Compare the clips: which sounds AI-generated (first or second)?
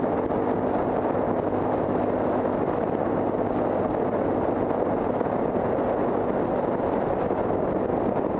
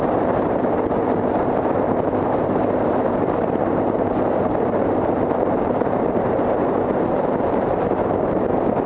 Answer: second